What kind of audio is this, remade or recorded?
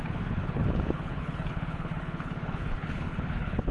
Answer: remade